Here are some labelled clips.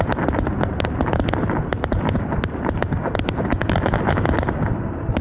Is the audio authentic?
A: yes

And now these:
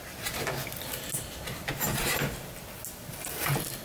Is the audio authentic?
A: yes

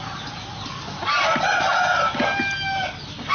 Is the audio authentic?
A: yes